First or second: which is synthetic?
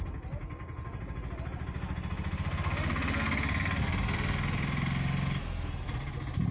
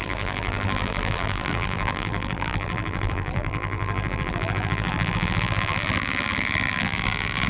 second